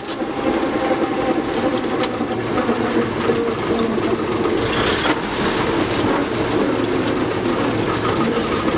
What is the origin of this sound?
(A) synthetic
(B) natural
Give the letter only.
B